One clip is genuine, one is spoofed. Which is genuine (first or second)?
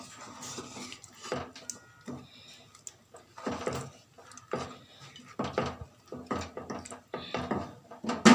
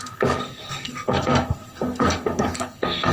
first